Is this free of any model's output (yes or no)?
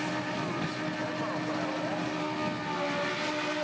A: yes